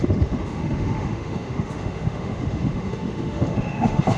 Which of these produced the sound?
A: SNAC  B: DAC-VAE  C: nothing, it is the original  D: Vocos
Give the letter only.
B